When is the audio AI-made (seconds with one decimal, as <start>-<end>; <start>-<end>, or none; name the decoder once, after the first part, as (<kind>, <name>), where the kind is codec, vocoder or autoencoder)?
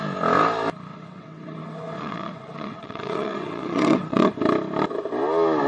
0.9-4.3 (vocoder, WaveNeXt)